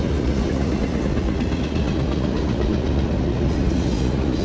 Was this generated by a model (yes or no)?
yes